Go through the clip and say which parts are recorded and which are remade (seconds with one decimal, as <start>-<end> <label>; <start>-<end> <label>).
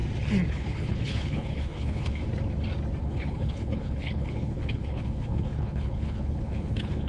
0.0-0.5 recorded; 0.5-2.2 remade; 2.2-3.0 recorded; 3.0-7.1 remade